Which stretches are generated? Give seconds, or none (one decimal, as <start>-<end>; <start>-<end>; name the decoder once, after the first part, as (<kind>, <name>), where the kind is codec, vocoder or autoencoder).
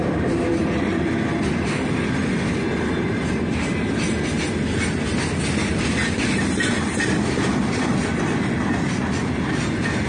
0.0-1.1 (vocoder, BigVGAN v2)